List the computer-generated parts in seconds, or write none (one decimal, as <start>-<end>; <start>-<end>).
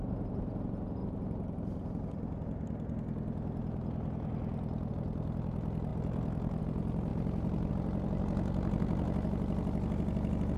none